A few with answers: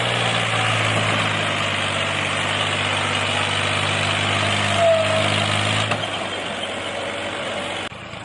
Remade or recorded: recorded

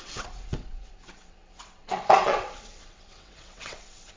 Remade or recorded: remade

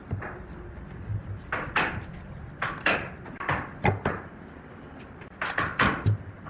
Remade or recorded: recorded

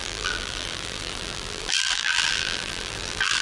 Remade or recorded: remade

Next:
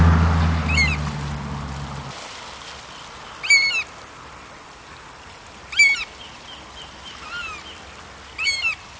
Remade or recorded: recorded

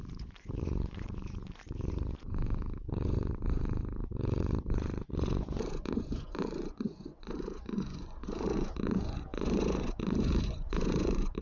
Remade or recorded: remade